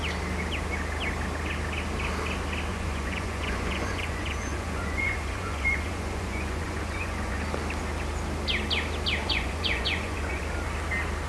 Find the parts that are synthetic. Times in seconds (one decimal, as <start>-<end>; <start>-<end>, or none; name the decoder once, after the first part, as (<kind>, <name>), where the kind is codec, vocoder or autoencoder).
2.7-7.4 (vocoder, Vocos); 9.2-10.4